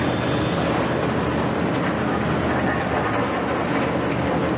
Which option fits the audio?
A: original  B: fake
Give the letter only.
A